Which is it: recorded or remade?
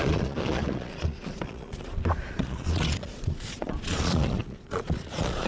remade